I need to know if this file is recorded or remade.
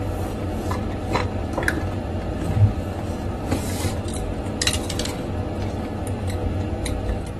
recorded